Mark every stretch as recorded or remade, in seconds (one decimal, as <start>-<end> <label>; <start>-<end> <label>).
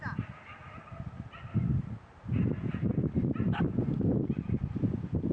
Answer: 0.0-5.3 recorded